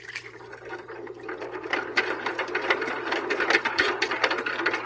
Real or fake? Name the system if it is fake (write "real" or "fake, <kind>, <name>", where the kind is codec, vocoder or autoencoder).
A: fake, vocoder, BigVGAN v2